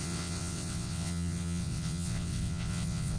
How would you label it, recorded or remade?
remade